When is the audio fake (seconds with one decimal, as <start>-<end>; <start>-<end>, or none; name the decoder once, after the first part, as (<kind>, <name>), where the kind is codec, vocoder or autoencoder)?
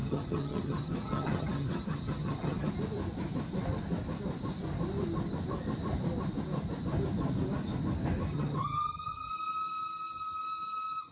0.0-2.7 (vocoder, HiFi-GAN); 8.3-9.3